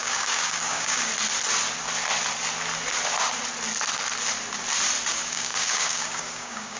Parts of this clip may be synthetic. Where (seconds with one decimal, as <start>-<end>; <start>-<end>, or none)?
0.0-1.1; 5.1-6.8